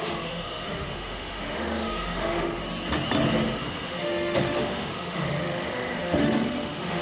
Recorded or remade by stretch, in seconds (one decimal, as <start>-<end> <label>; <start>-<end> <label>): 0.0-2.6 remade; 2.6-3.6 recorded; 3.6-7.0 remade